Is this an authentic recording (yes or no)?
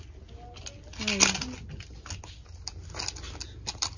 yes